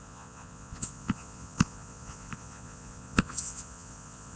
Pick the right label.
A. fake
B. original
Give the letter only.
A